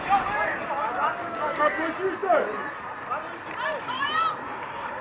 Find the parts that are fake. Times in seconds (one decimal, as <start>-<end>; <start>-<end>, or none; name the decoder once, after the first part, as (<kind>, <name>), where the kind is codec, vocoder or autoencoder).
1.2-1.8 (codec, DAC)